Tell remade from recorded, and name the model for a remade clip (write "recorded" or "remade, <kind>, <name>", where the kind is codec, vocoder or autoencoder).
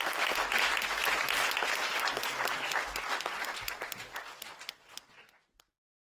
recorded